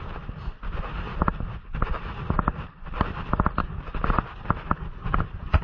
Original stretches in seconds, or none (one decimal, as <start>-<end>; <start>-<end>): 0.0-3.6; 4.5-5.6